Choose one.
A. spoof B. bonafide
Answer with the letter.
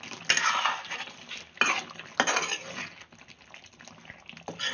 B